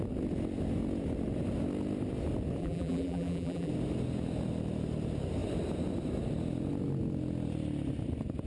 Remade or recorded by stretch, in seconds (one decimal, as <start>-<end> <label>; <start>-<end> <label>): 0.0-2.6 recorded; 2.6-3.7 remade; 3.7-8.5 recorded